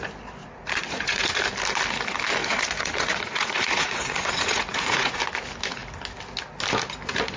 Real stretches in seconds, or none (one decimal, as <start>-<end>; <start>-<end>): 0.0-0.4; 1.4-2.4; 5.2-7.4